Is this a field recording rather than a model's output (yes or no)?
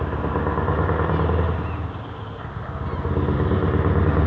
yes